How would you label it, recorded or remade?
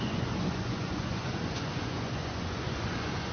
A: remade